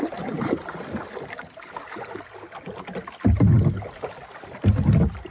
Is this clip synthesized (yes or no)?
no